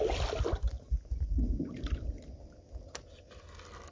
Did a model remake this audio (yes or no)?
no